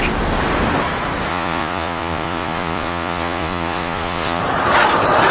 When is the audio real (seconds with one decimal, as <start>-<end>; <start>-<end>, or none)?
0.0-1.3; 4.4-5.3